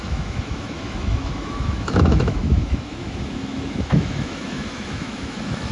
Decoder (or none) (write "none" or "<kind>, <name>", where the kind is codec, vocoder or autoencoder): autoencoder, DAC-VAE